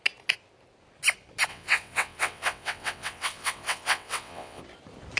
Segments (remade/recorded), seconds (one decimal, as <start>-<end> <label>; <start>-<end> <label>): 0.0-1.5 recorded; 1.5-4.6 remade; 4.6-5.2 recorded

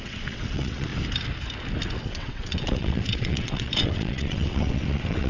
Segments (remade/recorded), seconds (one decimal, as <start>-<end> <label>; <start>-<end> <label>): 0.0-0.9 remade; 0.9-2.0 recorded; 2.0-5.3 remade

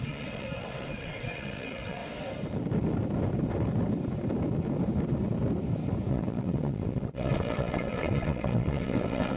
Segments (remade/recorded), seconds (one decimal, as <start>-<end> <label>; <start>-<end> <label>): 0.0-2.0 remade; 2.0-6.1 recorded; 6.1-9.4 remade

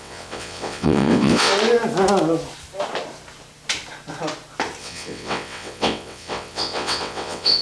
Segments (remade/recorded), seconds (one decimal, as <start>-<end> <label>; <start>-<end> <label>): 0.0-1.5 remade; 1.5-4.8 recorded; 4.8-7.6 remade

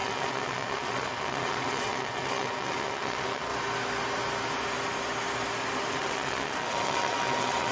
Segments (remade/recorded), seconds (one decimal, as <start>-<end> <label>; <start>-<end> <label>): 0.0-3.5 remade; 3.5-5.9 recorded; 5.9-7.7 remade

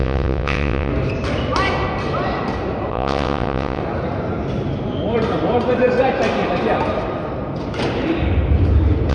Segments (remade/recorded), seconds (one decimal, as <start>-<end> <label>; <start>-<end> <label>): 0.0-0.9 remade; 0.9-2.9 recorded; 2.9-3.8 remade; 3.8-9.1 recorded

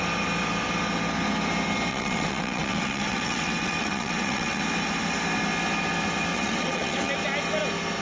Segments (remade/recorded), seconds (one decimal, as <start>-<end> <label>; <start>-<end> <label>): 0.0-1.9 recorded; 1.9-4.6 remade; 4.6-6.3 recorded; 6.3-7.1 remade; 7.1-8.0 recorded

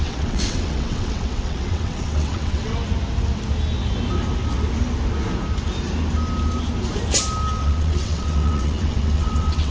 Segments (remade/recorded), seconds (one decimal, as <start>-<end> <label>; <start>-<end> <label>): 0.0-2.7 remade; 2.7-7.6 recorded; 7.6-9.7 remade